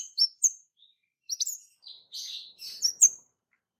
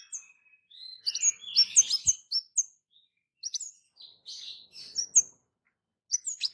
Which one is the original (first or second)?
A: second